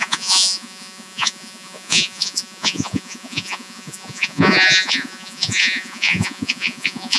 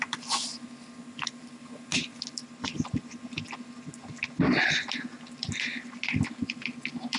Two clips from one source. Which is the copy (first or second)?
first